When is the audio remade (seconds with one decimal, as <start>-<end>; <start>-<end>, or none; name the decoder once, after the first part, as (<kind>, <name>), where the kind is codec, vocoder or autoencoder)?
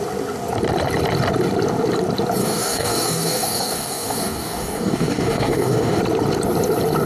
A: 2.4-6.0 (codec, DAC)